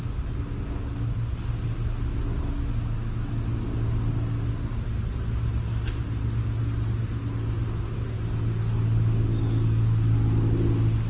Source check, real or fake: real